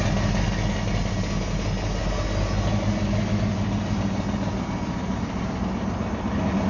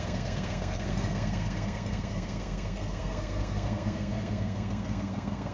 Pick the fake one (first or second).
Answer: second